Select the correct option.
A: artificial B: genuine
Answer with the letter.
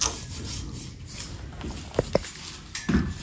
B